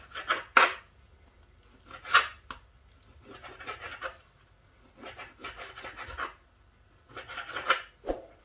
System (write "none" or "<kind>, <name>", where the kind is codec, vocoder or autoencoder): none